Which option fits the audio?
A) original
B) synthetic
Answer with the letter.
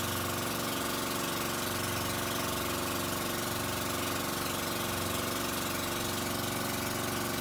A